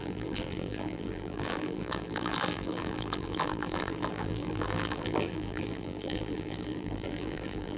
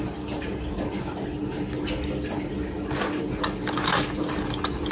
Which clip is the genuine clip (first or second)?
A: second